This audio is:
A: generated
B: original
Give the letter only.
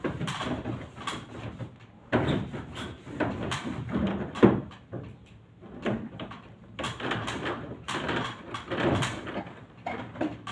A